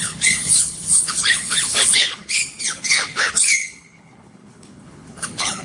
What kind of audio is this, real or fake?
fake